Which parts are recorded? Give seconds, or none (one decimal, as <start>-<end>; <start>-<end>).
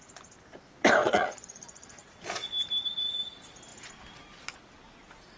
0.0-1.0; 2.5-5.4